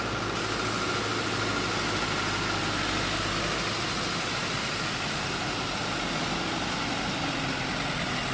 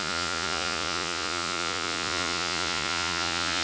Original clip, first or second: first